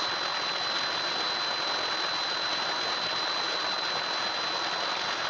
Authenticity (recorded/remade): recorded